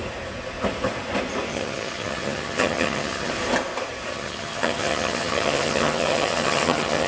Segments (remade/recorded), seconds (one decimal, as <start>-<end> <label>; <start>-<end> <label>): 0.0-1.5 recorded; 1.5-3.3 remade; 3.3-4.1 recorded; 4.1-7.1 remade